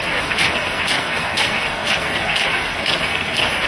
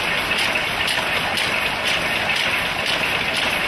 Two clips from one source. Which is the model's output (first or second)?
first